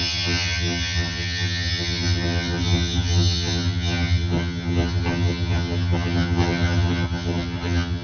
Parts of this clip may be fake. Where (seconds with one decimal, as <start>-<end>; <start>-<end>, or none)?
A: 0.0-8.0